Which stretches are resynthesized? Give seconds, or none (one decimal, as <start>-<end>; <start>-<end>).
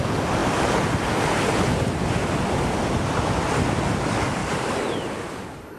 4.4-5.8